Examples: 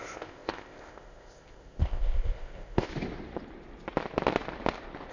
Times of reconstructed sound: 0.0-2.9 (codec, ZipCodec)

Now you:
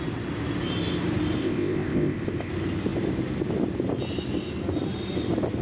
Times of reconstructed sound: 1.4-2.5 (codec, ZipCodec)

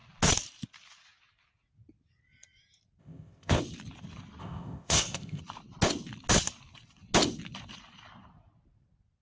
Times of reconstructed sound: 3.0-3.6 (codec, ZipCodec); 4.4-5.4